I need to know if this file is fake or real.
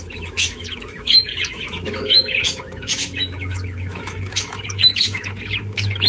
fake